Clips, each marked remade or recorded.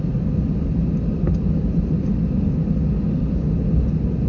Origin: recorded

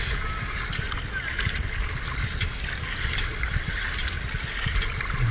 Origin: recorded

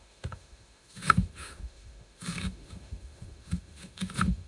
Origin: remade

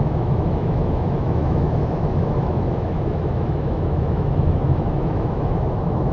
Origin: remade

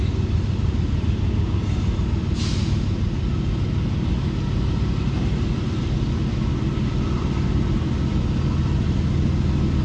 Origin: recorded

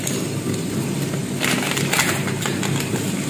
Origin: recorded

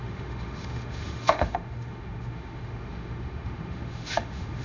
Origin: remade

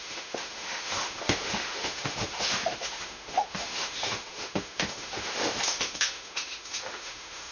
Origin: remade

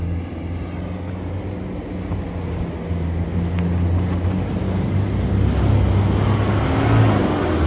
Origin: recorded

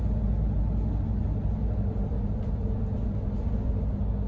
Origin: recorded